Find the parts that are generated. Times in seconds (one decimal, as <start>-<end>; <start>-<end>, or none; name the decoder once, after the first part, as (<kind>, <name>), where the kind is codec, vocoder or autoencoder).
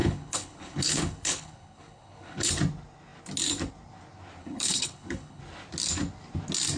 0.0-2.5 (codec, HILCodec); 4.4-5.4